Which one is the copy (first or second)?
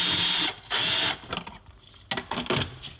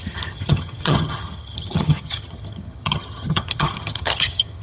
second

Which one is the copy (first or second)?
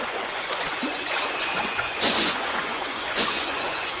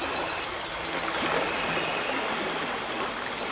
first